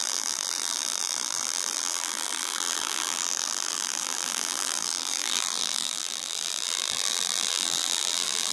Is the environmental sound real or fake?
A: fake